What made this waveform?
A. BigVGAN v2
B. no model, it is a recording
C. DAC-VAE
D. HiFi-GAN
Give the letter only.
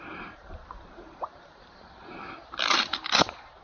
A